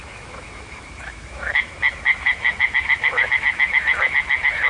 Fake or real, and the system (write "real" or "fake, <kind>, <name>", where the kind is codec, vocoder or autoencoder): fake, autoencoder, DAC-VAE